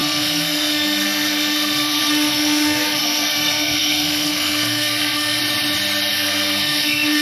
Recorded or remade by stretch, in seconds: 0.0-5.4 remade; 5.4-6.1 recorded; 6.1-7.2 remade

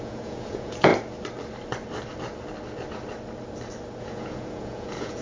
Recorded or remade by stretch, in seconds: 0.0-0.9 remade; 0.9-4.0 recorded; 4.0-5.2 remade

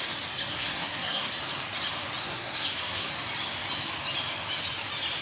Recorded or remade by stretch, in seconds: 0.0-0.5 recorded; 0.5-1.3 remade; 1.3-2.2 recorded; 2.2-3.1 remade; 3.1-5.2 recorded

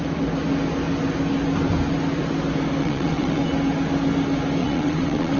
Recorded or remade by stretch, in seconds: 0.0-2.8 recorded; 2.8-3.4 remade; 3.4-4.6 recorded; 4.6-5.4 remade

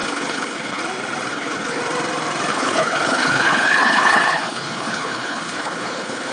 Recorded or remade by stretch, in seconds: 0.0-0.8 remade; 0.8-1.3 recorded; 1.3-1.8 remade; 1.8-2.5 recorded; 2.5-6.3 remade